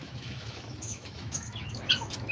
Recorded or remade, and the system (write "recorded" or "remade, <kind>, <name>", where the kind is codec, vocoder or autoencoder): remade, autoencoder, DAC-VAE